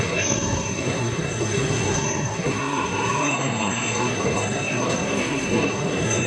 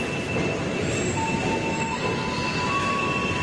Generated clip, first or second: first